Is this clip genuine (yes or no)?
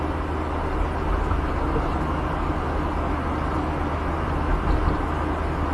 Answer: yes